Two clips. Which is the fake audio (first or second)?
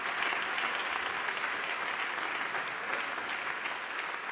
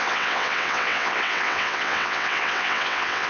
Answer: second